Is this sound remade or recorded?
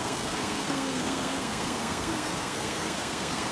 remade